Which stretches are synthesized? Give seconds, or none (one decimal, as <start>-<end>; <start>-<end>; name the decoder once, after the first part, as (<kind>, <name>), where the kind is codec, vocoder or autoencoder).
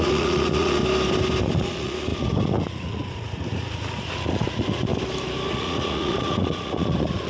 0.0-0.8 (vocoder, Vocos); 1.4-4.9; 5.5-7.3